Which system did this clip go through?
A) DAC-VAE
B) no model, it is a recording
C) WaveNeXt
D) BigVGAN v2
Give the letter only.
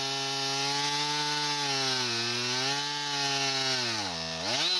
B